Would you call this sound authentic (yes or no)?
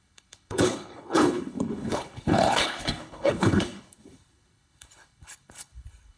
no